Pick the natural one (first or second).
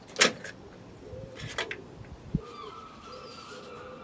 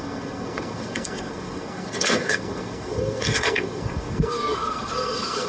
first